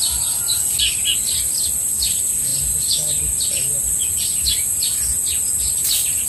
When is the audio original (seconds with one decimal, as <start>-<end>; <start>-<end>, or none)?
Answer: 0.0-6.3

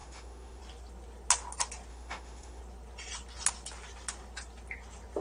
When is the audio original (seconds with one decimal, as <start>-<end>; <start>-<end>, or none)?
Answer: 0.6-1.9; 2.6-5.2

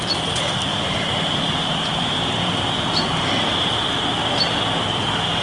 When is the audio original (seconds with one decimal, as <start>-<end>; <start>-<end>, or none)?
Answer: 0.0-0.7; 3.9-5.4

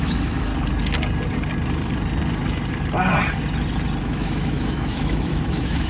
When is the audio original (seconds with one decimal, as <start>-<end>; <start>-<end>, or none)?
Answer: 0.5-4.0

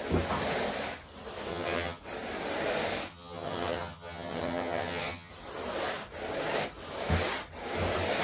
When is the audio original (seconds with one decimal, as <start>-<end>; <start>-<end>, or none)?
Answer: 0.0-1.5; 2.0-3.1; 5.3-8.2

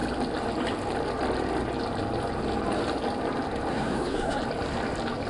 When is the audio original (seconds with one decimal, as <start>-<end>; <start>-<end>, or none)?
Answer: 0.0-3.7; 4.4-5.3